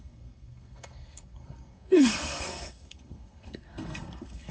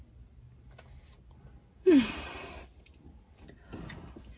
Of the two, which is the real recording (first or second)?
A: second